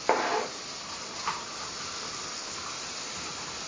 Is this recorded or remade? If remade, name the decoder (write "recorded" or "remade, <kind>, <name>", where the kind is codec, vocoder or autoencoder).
recorded